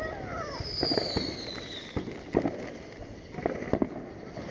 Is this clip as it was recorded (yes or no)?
yes